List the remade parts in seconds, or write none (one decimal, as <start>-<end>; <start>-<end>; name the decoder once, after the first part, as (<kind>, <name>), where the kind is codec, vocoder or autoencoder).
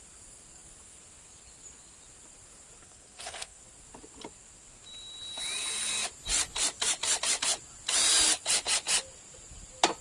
2.8-3.6 (codec, SNAC)